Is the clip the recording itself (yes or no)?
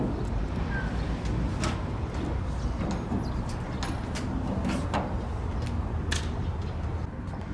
yes